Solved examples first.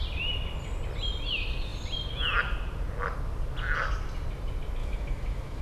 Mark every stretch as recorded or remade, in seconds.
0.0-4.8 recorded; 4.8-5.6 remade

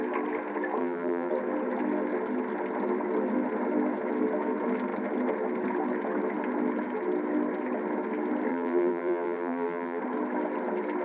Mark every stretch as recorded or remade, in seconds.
0.0-0.8 recorded; 0.8-1.3 remade; 1.3-8.5 recorded; 8.5-10.0 remade; 10.0-11.0 recorded

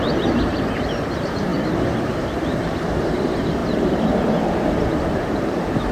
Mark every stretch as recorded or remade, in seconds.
0.0-5.9 remade

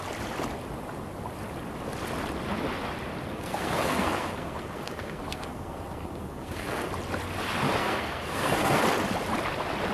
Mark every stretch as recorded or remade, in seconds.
0.0-3.3 recorded; 3.3-6.9 remade; 6.9-7.8 recorded; 7.8-8.8 remade; 8.8-9.9 recorded

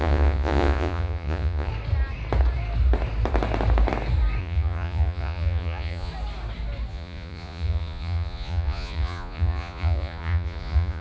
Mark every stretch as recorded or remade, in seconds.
0.0-1.7 remade; 1.7-4.4 recorded; 4.4-6.1 remade; 6.1-6.9 recorded; 6.9-11.0 remade